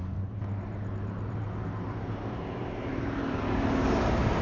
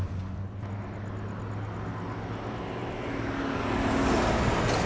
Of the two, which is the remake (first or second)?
first